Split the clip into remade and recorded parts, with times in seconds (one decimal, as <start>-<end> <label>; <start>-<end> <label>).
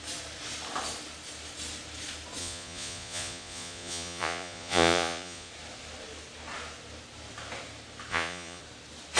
0.0-2.4 recorded; 2.4-5.5 remade; 5.5-8.1 recorded; 8.1-8.6 remade; 8.6-9.2 recorded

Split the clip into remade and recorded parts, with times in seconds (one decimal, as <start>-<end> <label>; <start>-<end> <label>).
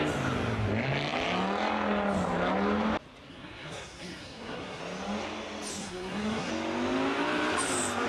0.0-3.3 recorded; 3.3-4.8 remade; 4.8-5.8 recorded; 5.8-6.5 remade; 6.5-8.1 recorded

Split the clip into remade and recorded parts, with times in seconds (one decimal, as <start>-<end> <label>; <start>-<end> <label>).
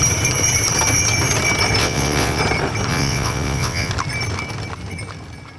0.0-1.8 recorded; 1.8-2.4 remade; 2.4-2.9 recorded; 2.9-3.9 remade; 3.9-5.6 recorded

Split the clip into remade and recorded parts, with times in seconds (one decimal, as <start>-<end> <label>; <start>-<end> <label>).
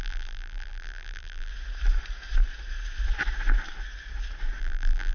0.0-1.5 remade; 1.5-4.6 recorded; 4.6-5.1 remade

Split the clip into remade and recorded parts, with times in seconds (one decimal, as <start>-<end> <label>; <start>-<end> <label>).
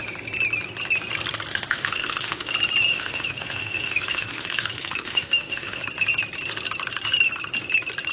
0.0-1.5 recorded; 1.5-2.5 remade; 2.5-2.9 recorded; 2.9-5.8 remade; 5.8-8.1 recorded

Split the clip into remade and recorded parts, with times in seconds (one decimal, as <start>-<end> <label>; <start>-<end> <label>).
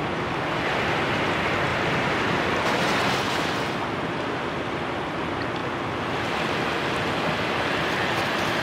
0.0-1.7 recorded; 1.7-2.4 remade; 2.4-8.6 recorded